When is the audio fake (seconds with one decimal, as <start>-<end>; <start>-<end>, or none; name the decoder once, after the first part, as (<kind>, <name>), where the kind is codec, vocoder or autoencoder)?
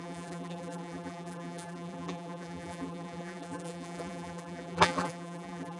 0.0-5.8 (vocoder, BigVGAN v2)